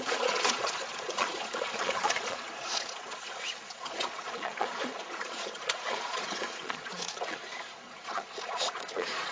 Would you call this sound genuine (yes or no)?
no